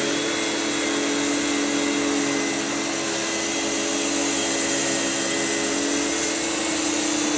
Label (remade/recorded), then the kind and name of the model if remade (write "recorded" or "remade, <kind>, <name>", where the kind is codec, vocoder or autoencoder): recorded